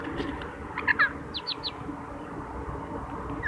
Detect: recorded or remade recorded